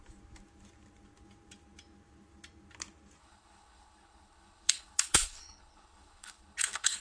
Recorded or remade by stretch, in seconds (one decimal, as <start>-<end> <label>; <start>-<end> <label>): 0.0-3.2 recorded; 3.2-7.0 remade